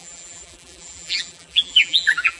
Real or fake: fake